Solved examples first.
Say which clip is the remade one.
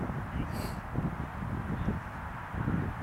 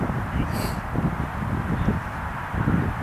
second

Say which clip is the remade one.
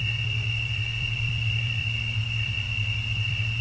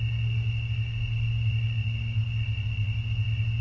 first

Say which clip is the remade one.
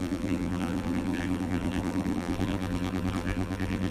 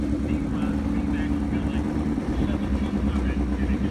first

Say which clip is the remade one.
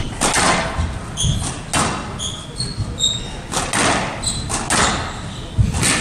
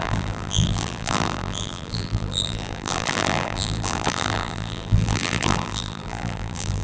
second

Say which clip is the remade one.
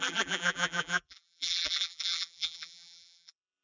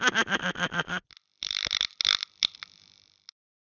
first